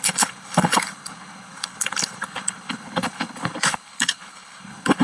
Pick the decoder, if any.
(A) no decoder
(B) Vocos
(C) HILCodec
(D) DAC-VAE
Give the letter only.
C